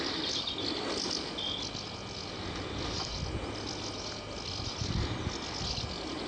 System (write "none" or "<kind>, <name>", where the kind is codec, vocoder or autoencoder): none